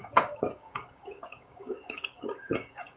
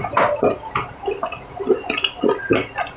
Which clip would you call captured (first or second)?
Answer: second